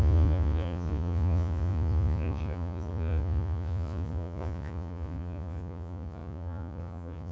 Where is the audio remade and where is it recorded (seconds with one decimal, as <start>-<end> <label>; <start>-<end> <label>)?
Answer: 0.0-7.3 remade